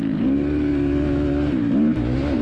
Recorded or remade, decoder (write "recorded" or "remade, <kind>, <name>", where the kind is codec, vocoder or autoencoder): recorded